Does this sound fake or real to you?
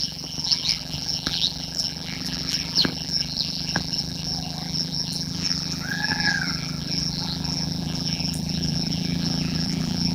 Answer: fake